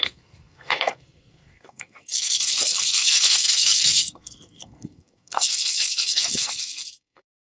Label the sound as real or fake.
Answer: fake